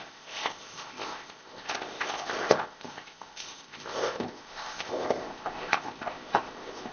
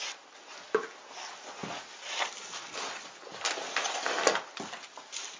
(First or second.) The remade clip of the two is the first